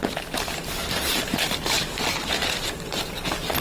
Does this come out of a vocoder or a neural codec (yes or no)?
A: yes